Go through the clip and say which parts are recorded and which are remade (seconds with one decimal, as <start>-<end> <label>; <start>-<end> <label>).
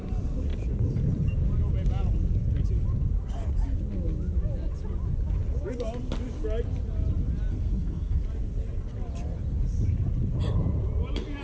0.0-7.5 recorded; 7.5-8.2 remade; 8.2-11.4 recorded